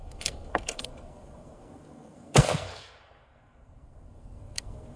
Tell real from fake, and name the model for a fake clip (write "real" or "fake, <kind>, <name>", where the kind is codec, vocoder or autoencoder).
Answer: fake, codec, SNAC